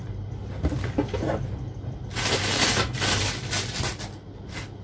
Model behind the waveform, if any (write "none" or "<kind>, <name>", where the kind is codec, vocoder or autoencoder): none